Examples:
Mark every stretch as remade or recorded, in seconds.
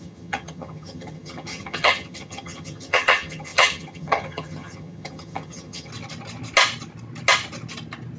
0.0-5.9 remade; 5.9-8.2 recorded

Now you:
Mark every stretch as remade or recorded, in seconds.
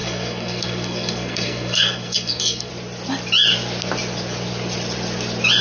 0.0-2.7 remade; 2.7-5.6 recorded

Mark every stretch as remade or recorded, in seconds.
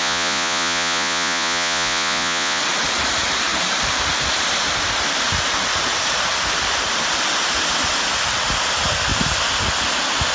0.0-2.6 remade; 2.6-10.3 recorded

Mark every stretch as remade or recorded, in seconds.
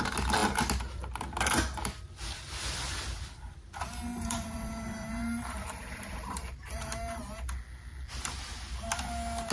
0.0-4.1 recorded; 4.1-7.3 remade; 7.3-9.5 recorded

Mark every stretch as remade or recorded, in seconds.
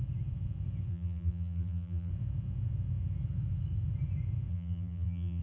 0.0-0.9 recorded; 0.9-2.1 remade; 2.1-4.5 recorded; 4.5-5.4 remade